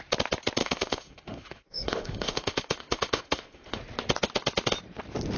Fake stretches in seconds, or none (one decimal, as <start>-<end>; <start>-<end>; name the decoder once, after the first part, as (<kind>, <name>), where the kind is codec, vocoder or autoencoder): 0.6-3.8 (autoencoder, DAC-VAE)